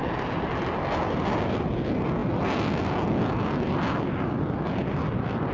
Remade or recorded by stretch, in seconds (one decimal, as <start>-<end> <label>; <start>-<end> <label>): 0.0-5.5 recorded